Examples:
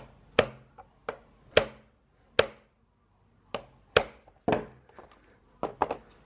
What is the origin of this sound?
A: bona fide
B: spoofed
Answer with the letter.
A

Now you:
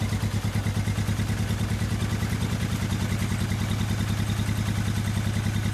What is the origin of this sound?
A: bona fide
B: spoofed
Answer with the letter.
A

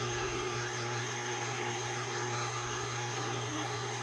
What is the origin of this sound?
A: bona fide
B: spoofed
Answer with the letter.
B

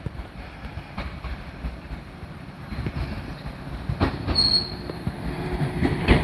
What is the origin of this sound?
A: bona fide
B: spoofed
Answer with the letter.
B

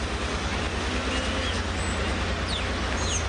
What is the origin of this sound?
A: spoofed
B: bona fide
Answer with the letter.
B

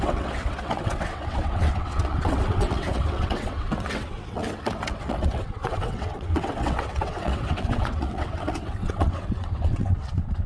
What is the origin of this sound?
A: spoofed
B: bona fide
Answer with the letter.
A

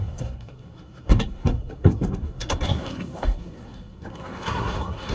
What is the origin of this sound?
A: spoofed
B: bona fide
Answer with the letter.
A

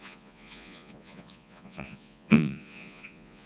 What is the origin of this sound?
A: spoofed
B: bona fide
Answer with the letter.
A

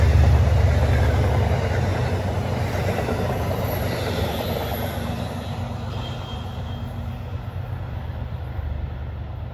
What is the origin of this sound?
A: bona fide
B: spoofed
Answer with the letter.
A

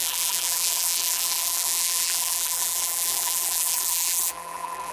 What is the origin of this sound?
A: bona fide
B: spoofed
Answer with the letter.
B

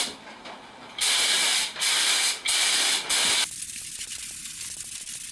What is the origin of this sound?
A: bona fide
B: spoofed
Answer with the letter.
A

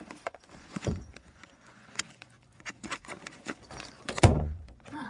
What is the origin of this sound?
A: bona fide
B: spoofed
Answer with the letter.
B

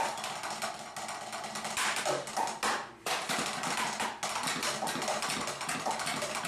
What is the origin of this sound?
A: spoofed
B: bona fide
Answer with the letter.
B